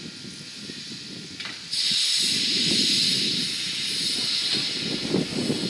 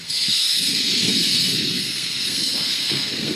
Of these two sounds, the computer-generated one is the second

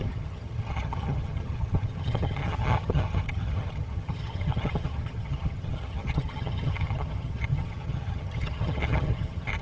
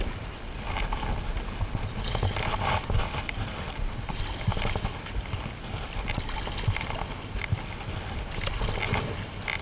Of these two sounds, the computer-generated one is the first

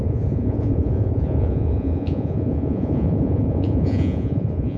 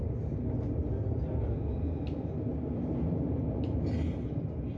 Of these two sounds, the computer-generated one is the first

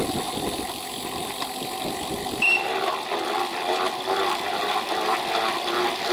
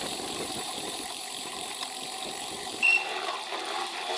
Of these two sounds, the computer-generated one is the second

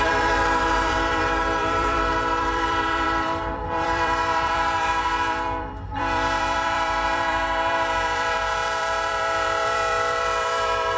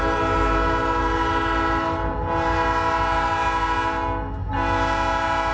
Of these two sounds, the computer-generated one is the first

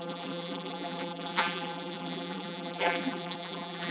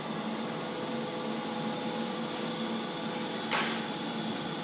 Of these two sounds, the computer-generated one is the first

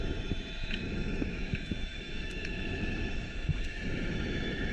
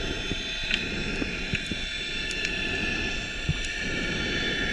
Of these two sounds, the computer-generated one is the first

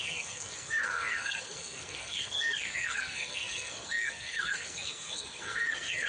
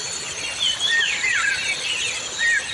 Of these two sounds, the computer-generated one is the first